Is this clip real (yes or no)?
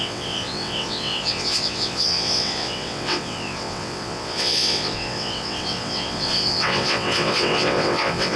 no